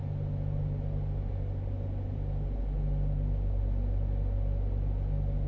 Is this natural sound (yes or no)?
yes